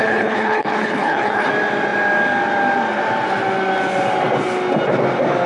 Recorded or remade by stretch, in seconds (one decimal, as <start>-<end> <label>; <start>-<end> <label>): 0.0-1.5 remade; 1.5-5.5 recorded